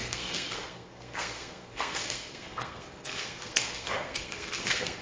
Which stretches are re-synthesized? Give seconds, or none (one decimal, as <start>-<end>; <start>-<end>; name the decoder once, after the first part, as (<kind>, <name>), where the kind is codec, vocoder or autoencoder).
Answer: 0.0-5.0 (codec, SNAC)